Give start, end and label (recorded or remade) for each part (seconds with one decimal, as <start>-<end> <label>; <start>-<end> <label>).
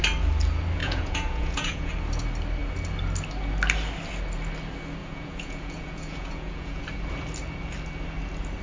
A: 0.0-0.8 recorded; 0.8-1.9 remade; 1.9-5.0 recorded; 5.0-6.8 remade; 6.8-8.6 recorded